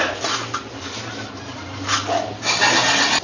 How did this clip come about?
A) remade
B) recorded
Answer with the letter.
B